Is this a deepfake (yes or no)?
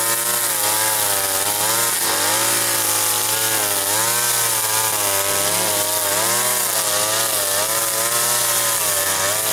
no